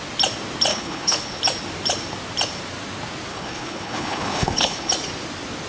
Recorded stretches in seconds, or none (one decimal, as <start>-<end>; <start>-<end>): 0.0-0.7; 1.4-3.3; 4.9-5.7